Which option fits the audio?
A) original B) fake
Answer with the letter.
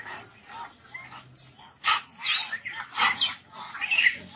A